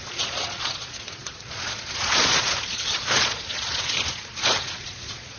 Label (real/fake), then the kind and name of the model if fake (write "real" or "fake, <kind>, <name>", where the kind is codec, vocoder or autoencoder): fake, vocoder, Vocos